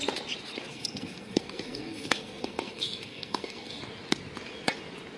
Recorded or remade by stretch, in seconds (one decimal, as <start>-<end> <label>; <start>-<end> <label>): 0.0-0.7 recorded; 0.7-3.8 remade; 3.8-5.2 recorded